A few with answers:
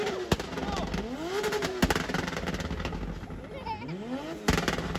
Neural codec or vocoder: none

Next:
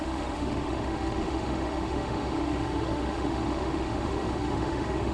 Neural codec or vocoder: autoencoder, DAC-VAE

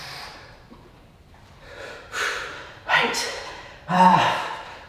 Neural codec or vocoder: vocoder, BigVGAN v2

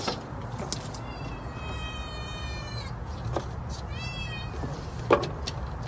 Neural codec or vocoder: none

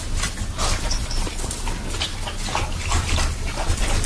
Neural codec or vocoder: none